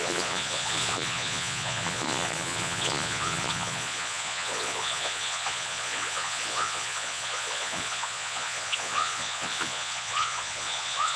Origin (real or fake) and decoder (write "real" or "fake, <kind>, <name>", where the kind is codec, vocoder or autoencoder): fake, vocoder, Vocos